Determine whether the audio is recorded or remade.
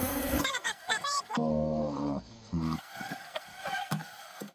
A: remade